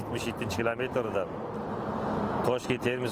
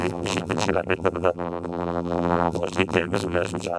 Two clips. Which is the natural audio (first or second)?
first